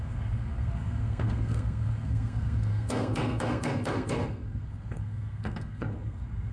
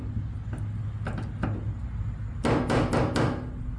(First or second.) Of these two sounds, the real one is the second